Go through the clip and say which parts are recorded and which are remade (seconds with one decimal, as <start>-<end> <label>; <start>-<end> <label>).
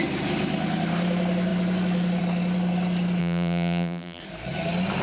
0.0-3.2 recorded; 3.2-4.2 remade; 4.2-5.0 recorded